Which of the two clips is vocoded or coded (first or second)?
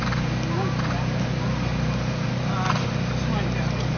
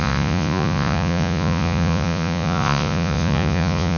second